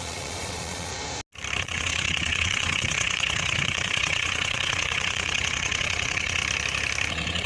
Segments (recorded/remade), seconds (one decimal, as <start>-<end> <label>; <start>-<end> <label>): 0.0-0.9 remade; 0.9-1.6 recorded; 1.6-6.4 remade; 6.4-7.1 recorded; 7.1-7.5 remade

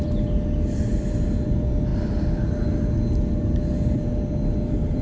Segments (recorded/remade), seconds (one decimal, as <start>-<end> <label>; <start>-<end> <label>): 0.0-5.0 recorded

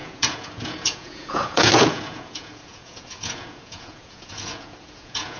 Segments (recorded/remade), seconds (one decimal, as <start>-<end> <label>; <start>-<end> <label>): 0.0-5.4 remade

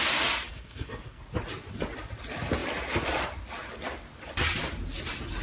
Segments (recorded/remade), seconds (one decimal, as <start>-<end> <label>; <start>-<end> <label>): 0.0-0.5 recorded; 0.5-1.2 remade; 1.2-5.4 recorded

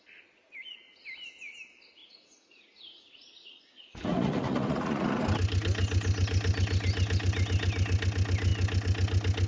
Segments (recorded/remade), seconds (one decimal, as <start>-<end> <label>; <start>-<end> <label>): 0.0-2.0 recorded; 2.0-5.2 remade; 5.2-9.5 recorded